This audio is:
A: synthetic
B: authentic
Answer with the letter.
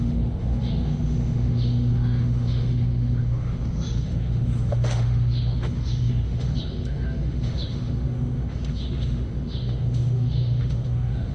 A